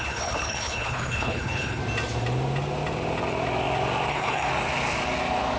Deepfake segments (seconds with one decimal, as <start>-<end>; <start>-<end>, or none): 0.0-1.8; 4.1-4.5